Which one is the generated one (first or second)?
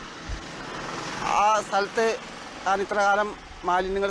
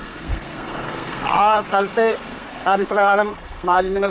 second